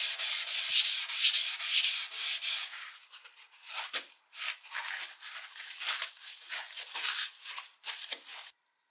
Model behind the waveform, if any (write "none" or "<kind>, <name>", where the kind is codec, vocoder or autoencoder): none